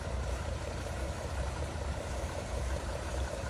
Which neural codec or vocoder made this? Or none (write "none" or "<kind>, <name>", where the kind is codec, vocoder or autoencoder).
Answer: vocoder, BigVGAN v2